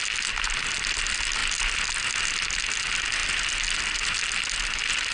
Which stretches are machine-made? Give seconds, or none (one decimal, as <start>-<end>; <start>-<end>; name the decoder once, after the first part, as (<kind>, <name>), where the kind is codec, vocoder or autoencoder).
none